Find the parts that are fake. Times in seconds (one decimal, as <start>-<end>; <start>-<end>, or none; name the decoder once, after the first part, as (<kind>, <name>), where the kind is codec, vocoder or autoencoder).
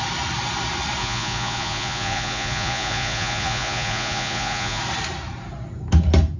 1.0-4.8 (vocoder, Vocos)